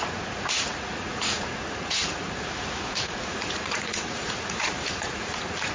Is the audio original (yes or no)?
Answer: no